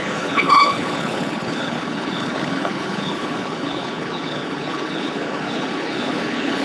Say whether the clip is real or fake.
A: fake